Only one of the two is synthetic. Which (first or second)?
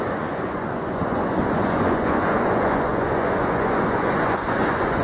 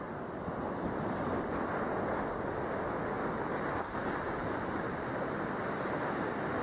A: first